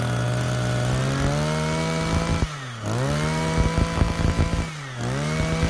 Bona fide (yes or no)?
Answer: yes